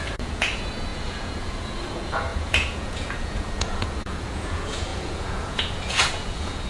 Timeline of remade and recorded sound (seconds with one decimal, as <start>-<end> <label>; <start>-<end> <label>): 0.0-6.7 remade